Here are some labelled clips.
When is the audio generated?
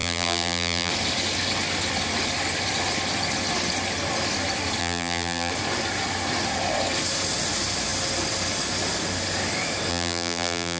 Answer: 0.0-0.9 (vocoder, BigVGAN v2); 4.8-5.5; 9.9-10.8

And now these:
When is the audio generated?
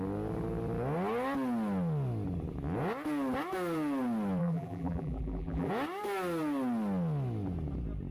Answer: 4.4-5.7 (vocoder, BigVGAN v2)